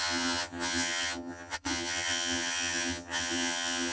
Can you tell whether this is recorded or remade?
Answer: remade